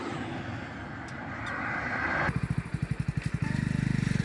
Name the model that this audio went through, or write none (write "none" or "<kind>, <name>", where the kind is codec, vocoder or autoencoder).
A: none